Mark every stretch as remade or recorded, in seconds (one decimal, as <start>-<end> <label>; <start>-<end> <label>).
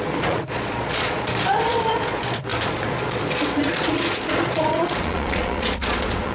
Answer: 0.0-6.3 remade